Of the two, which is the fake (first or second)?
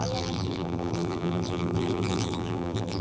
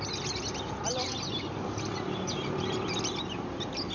first